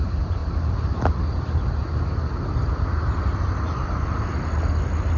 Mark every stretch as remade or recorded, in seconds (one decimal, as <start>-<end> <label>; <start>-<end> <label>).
0.0-5.2 recorded